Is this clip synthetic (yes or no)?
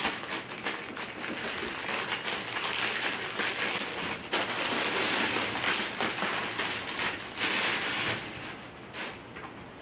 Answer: no